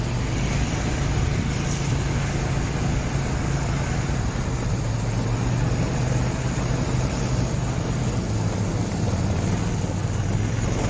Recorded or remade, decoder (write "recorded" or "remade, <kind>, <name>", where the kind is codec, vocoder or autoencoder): recorded